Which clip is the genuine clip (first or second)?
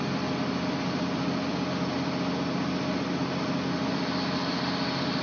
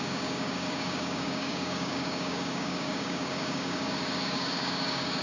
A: first